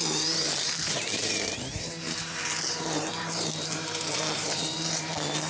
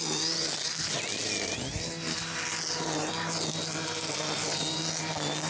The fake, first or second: first